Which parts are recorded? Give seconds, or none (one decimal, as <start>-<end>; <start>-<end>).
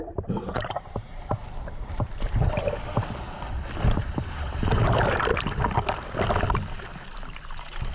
1.4-2.0; 2.6-4.1; 5.3-7.9